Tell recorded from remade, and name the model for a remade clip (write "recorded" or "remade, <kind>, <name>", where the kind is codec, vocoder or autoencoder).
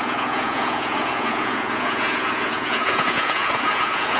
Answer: remade, vocoder, Vocos